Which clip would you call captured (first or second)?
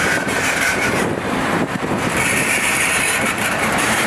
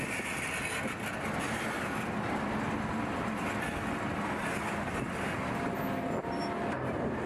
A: second